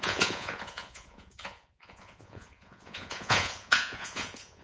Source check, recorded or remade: remade